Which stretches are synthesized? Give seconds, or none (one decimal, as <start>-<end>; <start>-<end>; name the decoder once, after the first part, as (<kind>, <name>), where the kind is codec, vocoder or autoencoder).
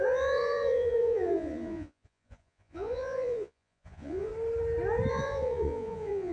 0.0-4.3 (vocoder, Vocos); 5.1-6.3